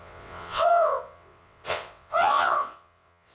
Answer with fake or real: fake